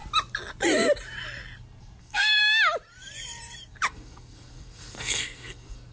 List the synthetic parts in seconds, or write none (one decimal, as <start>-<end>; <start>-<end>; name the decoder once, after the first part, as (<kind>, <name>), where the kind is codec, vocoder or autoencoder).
2.0-2.4 (codec, SNAC); 3.9-5.9